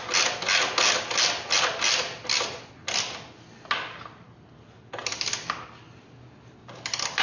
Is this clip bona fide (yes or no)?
yes